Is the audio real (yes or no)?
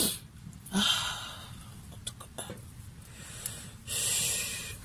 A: yes